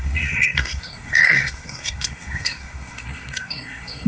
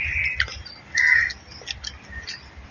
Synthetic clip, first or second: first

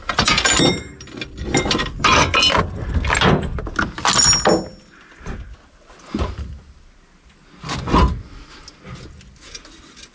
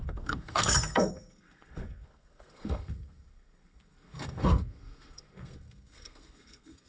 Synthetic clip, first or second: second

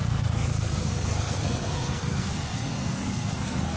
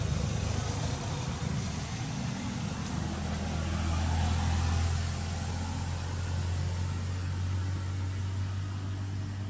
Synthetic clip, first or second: first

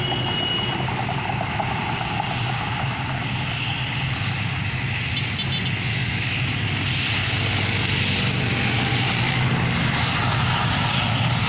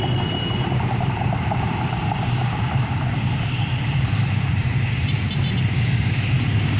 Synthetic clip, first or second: second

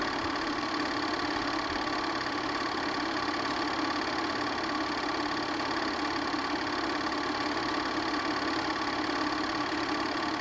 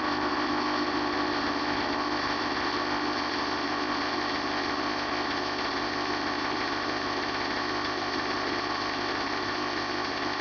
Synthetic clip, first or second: second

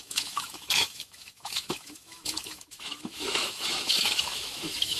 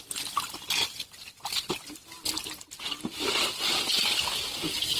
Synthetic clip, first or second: first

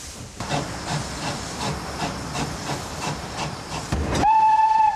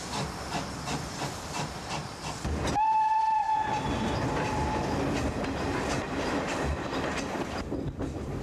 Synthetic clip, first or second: first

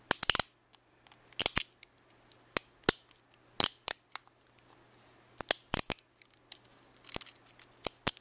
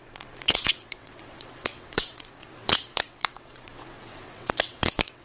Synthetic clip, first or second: second